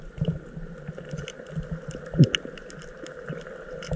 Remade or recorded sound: recorded